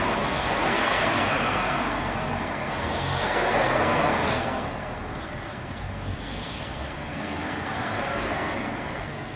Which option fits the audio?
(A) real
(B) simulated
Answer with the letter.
B